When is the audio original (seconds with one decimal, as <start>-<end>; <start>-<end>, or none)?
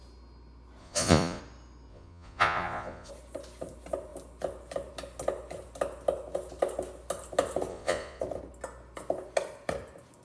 0.0-0.8; 1.4-1.9; 3.1-7.7; 8.2-10.2